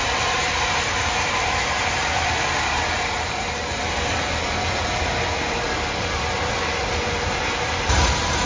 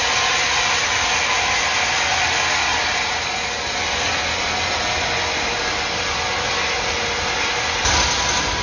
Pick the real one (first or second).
second